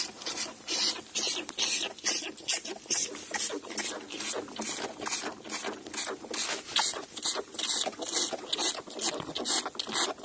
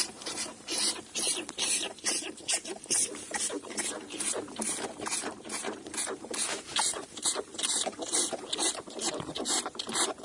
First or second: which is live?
first